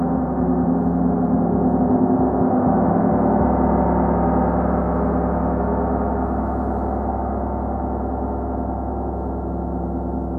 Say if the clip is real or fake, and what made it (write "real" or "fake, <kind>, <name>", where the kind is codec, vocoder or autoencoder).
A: real